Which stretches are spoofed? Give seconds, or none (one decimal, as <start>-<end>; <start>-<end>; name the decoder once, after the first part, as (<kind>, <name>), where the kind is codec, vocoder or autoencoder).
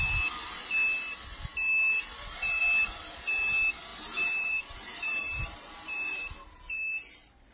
3.9-6.2 (vocoder, BigVGAN v2)